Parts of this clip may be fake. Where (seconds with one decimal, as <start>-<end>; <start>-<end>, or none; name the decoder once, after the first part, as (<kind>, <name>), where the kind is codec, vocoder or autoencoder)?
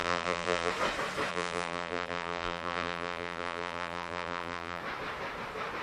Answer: 0.0-0.7 (vocoder, BigVGAN v2); 1.3-4.8